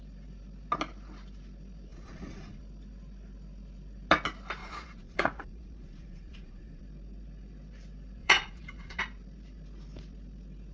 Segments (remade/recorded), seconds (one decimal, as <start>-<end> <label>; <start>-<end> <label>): 0.0-1.9 recorded; 1.9-2.6 remade; 2.6-4.6 recorded; 4.6-6.8 remade; 6.8-8.2 recorded; 8.2-9.0 remade; 9.0-10.7 recorded